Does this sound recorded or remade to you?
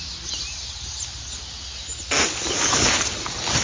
recorded